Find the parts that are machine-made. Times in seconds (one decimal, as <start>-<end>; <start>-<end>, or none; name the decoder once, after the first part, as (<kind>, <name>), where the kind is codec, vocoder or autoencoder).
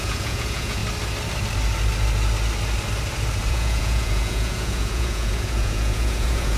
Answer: 0.0-0.8 (vocoder, Vocos); 3.5-6.6